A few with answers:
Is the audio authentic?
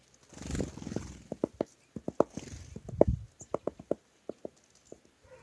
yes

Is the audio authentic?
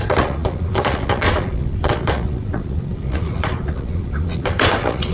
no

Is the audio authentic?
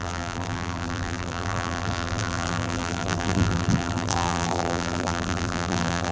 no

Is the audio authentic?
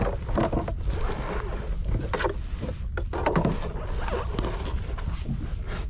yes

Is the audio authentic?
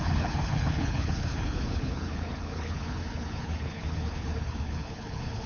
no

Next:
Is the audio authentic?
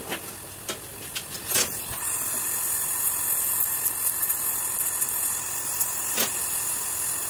yes